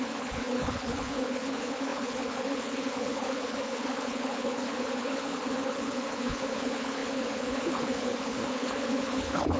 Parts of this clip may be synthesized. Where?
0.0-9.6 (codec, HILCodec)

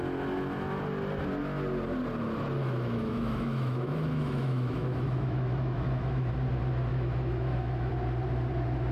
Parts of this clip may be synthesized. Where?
2.6-6.3 (autoencoder, DAC-VAE); 6.9-7.9

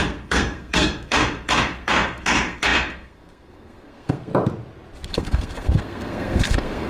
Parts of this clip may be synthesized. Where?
0.0-4.3 (codec, SNAC); 5.1-6.9

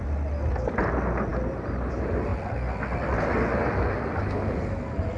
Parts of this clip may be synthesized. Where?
none

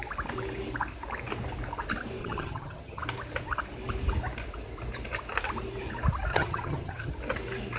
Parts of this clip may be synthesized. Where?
2.2-3.0 (vocoder, HiFi-GAN); 6.3-7.1

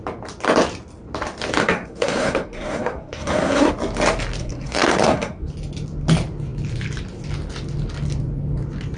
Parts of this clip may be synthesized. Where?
1.6-3.7 (codec, SNAC); 4.4-5.5